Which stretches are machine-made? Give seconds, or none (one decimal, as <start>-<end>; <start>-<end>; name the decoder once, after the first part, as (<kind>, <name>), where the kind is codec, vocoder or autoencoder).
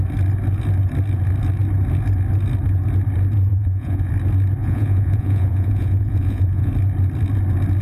3.5-4.1 (vocoder, Vocos); 4.6-6.7